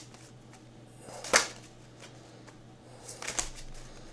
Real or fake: real